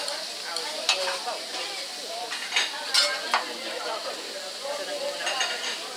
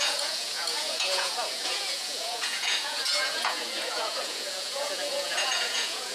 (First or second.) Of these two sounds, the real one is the first